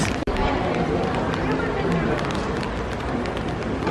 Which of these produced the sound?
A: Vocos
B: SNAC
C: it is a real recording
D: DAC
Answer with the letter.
C